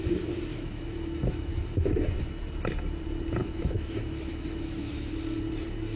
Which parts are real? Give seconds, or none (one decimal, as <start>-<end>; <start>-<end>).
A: 0.0-0.5; 1.9-3.4; 5.1-6.0